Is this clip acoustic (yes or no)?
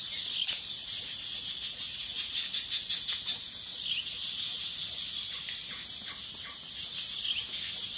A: yes